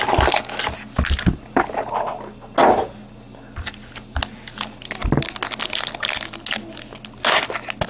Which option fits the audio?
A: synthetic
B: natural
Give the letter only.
B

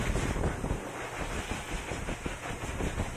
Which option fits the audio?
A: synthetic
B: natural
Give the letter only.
B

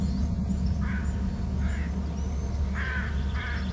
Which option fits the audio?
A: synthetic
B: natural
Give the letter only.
B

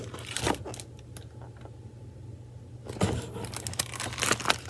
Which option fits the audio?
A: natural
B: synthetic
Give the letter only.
A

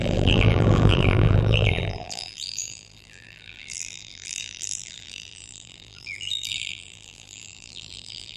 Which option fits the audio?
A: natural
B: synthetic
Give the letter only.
B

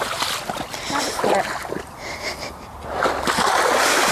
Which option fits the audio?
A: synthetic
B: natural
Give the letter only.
B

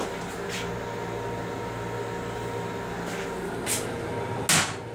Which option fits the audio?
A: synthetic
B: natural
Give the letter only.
B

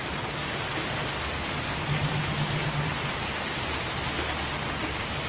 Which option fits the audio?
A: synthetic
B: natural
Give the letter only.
B